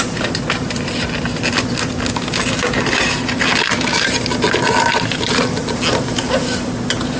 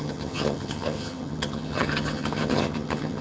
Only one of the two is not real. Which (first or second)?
second